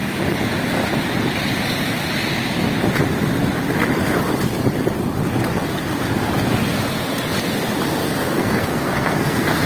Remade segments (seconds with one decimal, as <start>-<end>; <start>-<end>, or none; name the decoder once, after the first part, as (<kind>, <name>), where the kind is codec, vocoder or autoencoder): 8.0-9.7 (codec, SNAC)